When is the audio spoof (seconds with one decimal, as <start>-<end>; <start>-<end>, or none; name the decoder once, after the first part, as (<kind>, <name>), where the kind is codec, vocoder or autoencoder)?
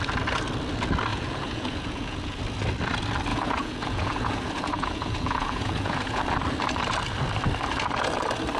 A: 1.1-2.4 (vocoder, Vocos); 3.3-6.2